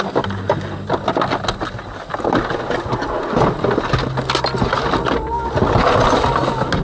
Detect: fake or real real